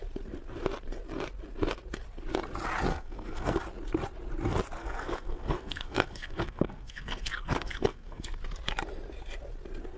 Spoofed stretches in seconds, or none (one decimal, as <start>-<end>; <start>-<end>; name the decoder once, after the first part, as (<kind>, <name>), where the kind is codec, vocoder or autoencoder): 2.9-3.6 (codec, SNAC); 4.8-8.4